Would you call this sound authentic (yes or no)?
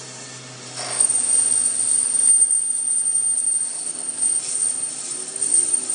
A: yes